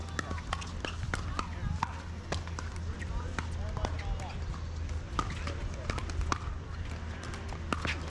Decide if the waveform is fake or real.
real